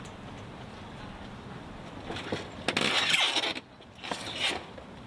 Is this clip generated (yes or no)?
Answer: no